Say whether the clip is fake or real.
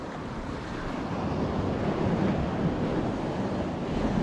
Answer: real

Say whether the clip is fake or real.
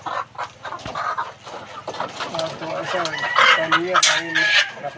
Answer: real